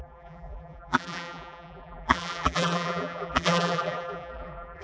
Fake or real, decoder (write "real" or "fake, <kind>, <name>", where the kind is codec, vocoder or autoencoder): fake, vocoder, BigVGAN v2